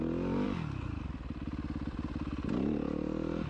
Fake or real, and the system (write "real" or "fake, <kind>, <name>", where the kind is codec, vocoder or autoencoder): real